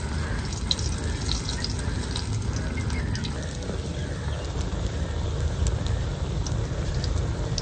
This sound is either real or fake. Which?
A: real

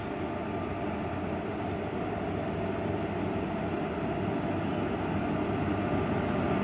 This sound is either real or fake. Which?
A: real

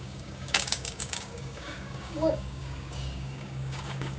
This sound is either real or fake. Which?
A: fake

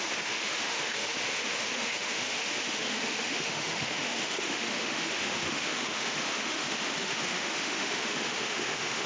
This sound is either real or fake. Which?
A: fake